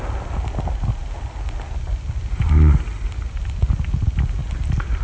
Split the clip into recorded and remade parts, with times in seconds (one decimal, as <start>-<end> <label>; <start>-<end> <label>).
0.0-5.0 recorded